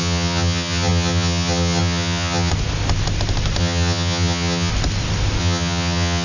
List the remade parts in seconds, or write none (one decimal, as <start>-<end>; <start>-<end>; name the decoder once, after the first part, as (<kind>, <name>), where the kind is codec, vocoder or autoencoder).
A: 0.0-2.5 (vocoder, HiFi-GAN); 3.6-4.7; 5.4-6.2